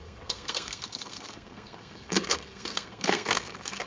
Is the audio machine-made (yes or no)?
yes